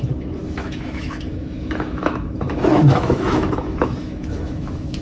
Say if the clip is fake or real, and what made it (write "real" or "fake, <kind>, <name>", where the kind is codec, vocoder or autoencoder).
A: fake, autoencoder, DAC-VAE